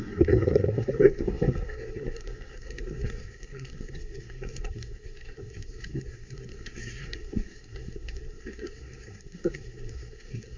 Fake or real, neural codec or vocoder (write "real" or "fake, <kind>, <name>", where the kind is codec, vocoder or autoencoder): fake, codec, SNAC